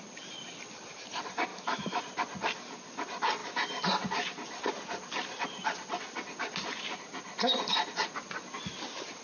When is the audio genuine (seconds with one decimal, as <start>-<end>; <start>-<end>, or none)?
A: 0.0-1.5; 2.0-9.2